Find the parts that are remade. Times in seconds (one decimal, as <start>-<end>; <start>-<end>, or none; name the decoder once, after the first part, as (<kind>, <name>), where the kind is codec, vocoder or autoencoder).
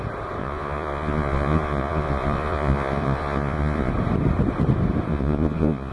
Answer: 0.4-3.9 (vocoder, Vocos); 5.1-5.9